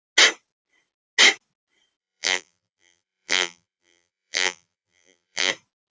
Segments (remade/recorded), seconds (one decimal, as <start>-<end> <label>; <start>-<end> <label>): 0.0-2.0 recorded; 2.0-5.5 remade; 5.5-5.9 recorded